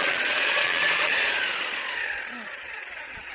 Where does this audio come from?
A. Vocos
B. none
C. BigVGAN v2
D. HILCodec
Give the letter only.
A